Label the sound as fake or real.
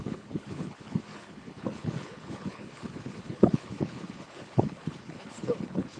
fake